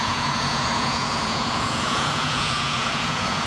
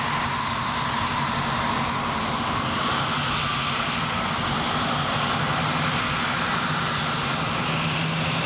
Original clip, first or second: second